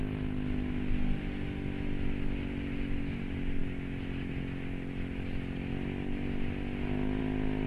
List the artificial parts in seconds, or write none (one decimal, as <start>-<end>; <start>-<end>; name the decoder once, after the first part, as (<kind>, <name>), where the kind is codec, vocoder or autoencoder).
none

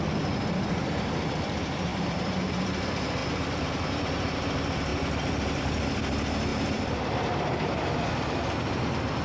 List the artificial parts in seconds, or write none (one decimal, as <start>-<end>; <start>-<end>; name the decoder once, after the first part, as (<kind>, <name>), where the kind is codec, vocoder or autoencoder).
1.9-2.6 (vocoder, BigVGAN v2); 3.2-3.8; 6.5-7.7

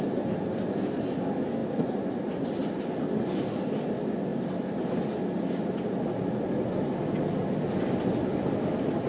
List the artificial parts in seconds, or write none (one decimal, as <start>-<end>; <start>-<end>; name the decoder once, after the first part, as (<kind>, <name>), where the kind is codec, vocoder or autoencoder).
8.3-9.1 (vocoder, BigVGAN v2)

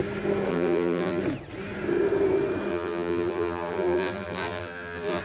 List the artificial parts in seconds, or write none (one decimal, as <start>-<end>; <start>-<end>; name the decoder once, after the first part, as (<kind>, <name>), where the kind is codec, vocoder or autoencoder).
0.5-1.2 (vocoder, BigVGAN v2); 2.7-5.2

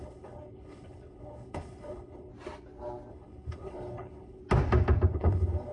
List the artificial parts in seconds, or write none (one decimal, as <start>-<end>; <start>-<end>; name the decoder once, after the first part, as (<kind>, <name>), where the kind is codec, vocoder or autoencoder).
0.0-2.3 (codec, HILCodec); 3.1-4.4; 5.1-5.7

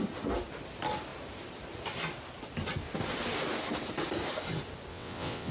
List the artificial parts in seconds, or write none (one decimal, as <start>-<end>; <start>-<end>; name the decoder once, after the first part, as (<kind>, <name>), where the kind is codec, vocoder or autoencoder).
4.9-5.5 (vocoder, WaveNeXt)

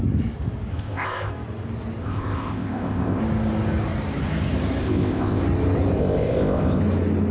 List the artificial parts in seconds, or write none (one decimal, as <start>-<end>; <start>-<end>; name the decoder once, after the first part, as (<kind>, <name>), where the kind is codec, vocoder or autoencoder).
0.7-1.3 (codec, ZipCodec); 2.0-3.2; 4.8-5.4; 6.0-6.8

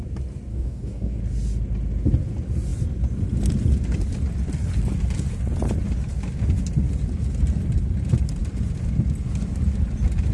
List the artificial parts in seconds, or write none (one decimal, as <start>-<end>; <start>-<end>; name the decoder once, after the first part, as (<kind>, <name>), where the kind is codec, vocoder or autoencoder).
0.5-1.2 (codec, DAC)